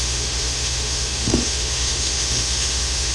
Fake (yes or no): yes